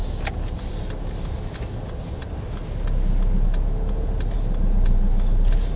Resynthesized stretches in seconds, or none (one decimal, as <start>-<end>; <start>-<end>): none